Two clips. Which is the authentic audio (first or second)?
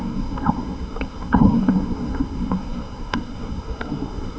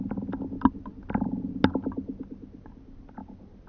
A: second